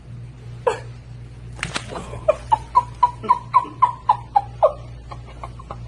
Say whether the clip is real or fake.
real